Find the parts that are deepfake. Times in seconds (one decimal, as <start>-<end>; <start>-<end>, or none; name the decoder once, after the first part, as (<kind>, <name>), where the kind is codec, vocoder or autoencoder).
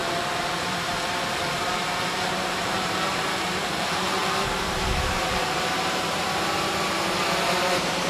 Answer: 0.0-8.1 (vocoder, BigVGAN v2)